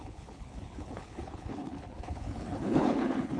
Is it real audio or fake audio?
fake